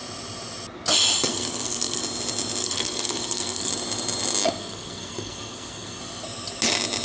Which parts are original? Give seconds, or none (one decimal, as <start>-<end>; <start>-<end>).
0.0-1.3; 2.0-2.6; 3.7-4.6; 6.0-7.0